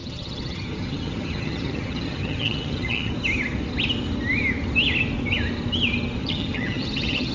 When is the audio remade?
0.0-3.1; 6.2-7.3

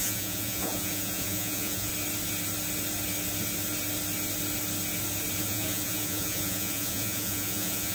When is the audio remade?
0.0-1.9; 5.4-7.9

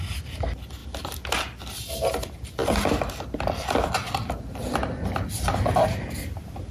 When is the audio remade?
2.6-4.4

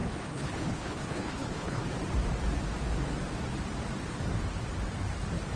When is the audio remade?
0.0-1.8

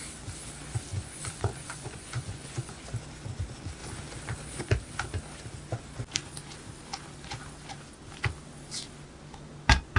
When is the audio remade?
0.9-2.8

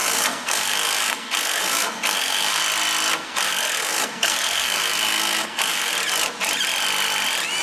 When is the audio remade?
0.0-2.6; 3.1-5.9

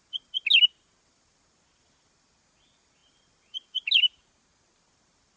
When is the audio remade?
none